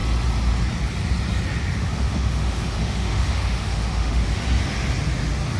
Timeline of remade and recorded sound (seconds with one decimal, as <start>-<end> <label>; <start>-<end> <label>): 0.0-1.6 recorded; 1.6-4.4 remade; 4.4-5.6 recorded